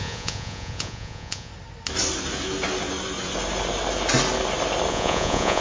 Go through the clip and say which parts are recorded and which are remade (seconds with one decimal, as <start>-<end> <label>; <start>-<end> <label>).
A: 0.0-1.5 remade; 1.5-4.9 recorded; 4.9-5.6 remade